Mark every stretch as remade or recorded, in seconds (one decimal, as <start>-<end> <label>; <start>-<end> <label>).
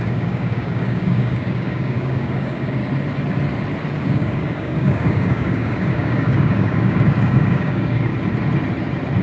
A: 0.0-2.8 remade; 2.8-4.0 recorded; 4.0-8.1 remade; 8.1-9.2 recorded